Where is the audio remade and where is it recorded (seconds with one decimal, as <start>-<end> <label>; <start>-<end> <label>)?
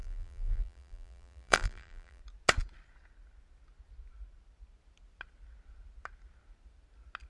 0.0-2.2 remade; 2.2-7.3 recorded